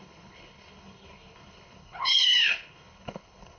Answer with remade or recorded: remade